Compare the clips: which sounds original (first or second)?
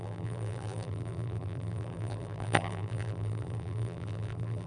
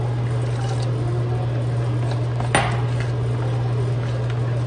second